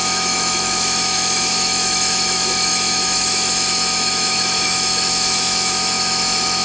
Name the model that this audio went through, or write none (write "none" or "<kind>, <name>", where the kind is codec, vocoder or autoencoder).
autoencoder, DAC-VAE